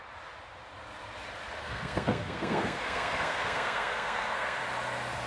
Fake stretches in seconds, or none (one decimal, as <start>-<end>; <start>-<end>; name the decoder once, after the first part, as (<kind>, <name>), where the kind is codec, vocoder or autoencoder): 1.6-4.6 (codec, SNAC)